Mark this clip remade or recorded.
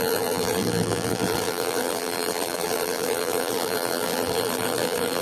remade